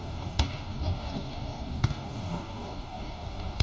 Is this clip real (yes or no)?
no